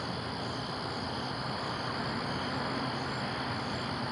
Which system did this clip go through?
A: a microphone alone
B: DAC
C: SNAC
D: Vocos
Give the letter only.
A